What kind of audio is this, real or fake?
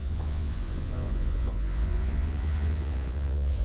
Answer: fake